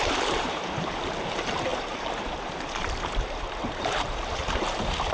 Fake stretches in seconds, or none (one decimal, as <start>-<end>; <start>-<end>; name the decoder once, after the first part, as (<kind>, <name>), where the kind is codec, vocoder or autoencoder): 0.0-5.1 (vocoder, BigVGAN v2)